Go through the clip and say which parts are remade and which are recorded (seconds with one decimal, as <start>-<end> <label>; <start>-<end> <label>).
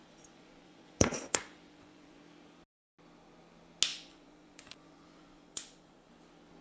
0.0-2.2 remade; 2.2-3.9 recorded; 3.9-6.1 remade; 6.1-6.6 recorded